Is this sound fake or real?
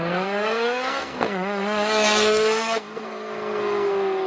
fake